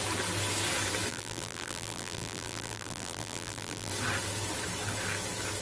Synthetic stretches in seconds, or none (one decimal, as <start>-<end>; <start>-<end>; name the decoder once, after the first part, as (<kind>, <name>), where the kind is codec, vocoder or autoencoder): 1.1-3.9 (vocoder, BigVGAN v2)